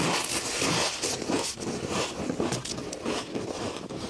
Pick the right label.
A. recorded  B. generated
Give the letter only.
A